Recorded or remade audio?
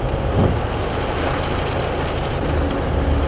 recorded